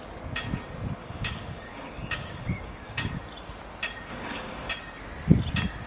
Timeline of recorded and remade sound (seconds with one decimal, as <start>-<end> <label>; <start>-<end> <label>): 0.0-1.0 recorded; 1.0-3.2 remade; 3.2-4.1 recorded; 4.1-4.7 remade; 4.7-5.9 recorded